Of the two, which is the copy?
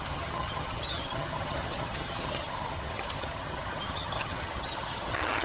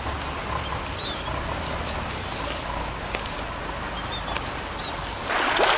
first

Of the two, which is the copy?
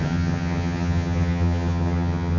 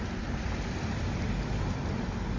first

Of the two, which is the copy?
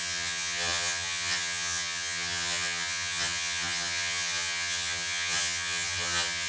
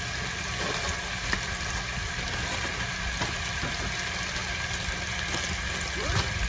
first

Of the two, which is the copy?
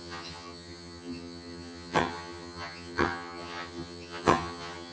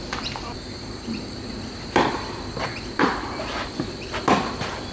first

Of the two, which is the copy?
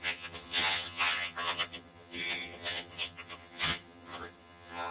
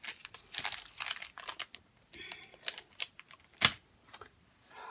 first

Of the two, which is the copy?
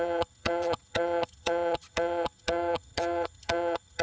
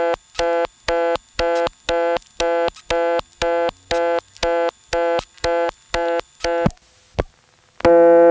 first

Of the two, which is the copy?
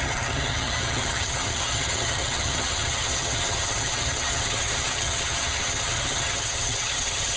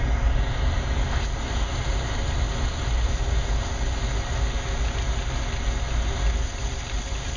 first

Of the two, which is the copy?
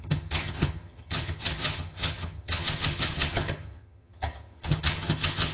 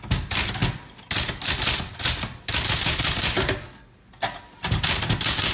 first